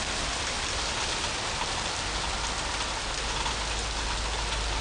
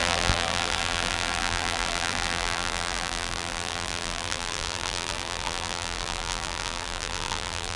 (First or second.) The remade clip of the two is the second